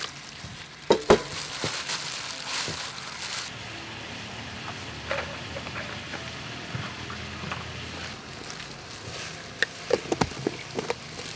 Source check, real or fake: real